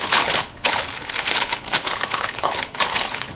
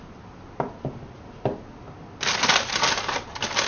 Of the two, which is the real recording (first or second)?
second